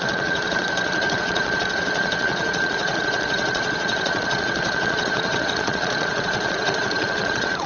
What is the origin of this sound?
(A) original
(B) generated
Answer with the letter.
B